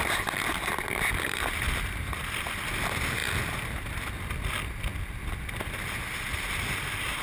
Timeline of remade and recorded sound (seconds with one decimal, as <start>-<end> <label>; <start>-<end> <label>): 0.0-7.2 recorded